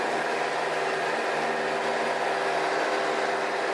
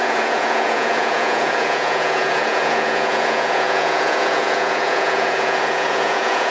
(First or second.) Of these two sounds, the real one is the first